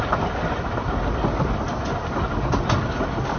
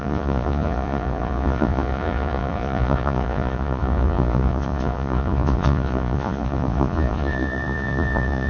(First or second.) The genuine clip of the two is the first